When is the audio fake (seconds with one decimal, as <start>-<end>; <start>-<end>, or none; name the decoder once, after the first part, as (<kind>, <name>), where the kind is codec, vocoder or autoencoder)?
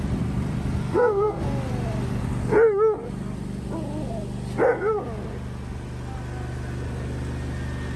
0.8-1.4 (codec, SNAC)